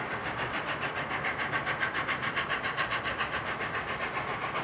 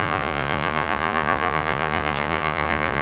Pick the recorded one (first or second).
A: first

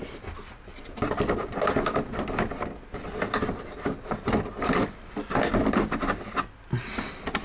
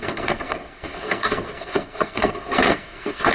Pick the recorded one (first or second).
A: first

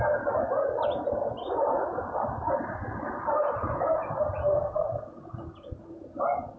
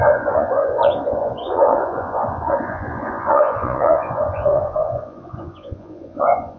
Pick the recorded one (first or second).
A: first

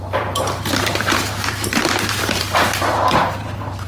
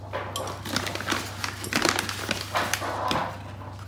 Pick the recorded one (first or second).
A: second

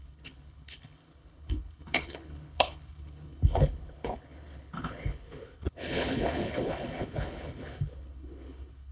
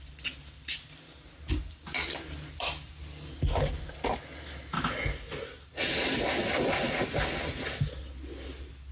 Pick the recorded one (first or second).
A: second